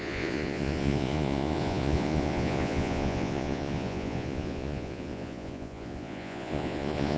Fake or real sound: fake